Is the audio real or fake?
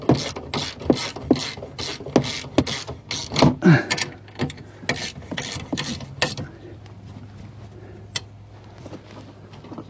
real